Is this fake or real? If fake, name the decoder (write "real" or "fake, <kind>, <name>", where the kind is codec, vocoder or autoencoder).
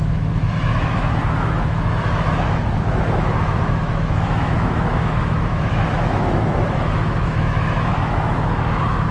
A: fake, autoencoder, DAC-VAE